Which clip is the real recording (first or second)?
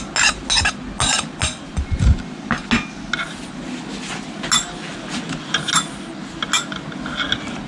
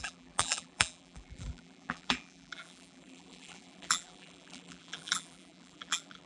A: first